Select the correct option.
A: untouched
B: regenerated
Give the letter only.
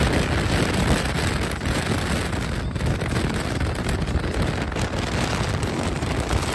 A